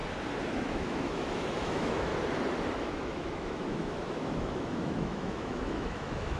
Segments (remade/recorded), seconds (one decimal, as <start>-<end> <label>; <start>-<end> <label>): 0.0-0.6 recorded; 0.6-2.1 remade; 2.1-2.8 recorded; 2.8-6.4 remade